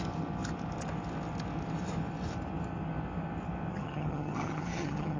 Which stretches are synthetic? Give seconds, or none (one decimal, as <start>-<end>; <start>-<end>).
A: 3.7-5.2